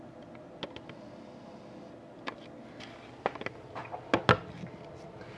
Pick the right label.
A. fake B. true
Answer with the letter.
B